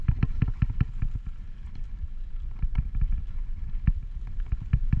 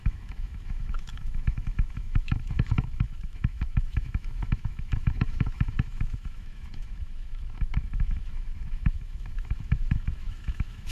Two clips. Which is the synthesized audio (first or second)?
second